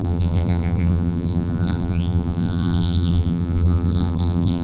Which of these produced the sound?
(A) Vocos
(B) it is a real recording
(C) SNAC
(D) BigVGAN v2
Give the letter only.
D